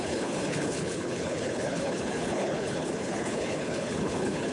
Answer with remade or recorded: remade